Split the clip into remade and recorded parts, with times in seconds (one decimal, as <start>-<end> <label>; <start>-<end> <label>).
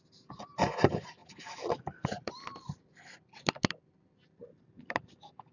0.0-5.5 recorded